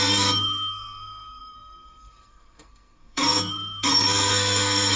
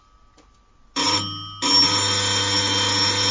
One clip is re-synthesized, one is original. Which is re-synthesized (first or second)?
first